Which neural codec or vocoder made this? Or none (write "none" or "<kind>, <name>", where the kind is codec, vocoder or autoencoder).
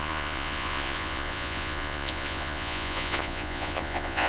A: vocoder, Vocos